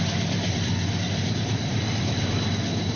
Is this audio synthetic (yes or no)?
yes